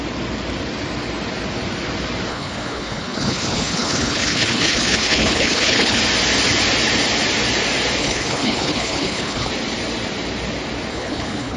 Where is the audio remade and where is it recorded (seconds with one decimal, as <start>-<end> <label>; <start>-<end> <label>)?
0.0-2.3 recorded; 2.3-6.0 remade; 6.0-8.0 recorded; 8.0-9.5 remade; 9.5-10.9 recorded; 10.9-11.6 remade